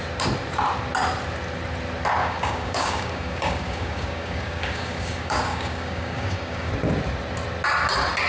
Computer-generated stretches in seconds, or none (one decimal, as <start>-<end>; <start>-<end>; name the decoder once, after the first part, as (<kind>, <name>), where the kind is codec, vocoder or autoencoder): 2.2-6.7 (codec, DAC)